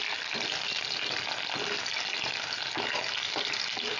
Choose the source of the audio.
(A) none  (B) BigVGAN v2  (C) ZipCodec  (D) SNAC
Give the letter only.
A